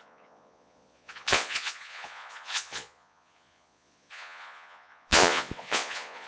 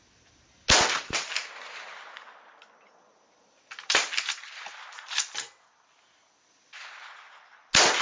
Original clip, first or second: second